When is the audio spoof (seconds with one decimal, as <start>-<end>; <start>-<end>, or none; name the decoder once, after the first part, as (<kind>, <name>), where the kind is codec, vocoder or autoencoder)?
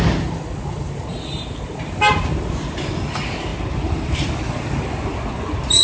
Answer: 3.5-4.3 (vocoder, BigVGAN v2)